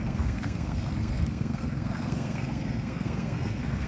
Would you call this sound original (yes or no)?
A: no